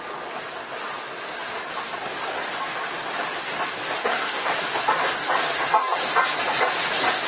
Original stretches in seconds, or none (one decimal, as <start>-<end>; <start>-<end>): 0.0-4.0; 4.5-7.3